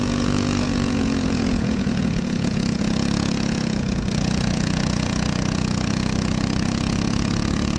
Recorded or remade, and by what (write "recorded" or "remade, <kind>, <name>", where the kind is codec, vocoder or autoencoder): remade, vocoder, Vocos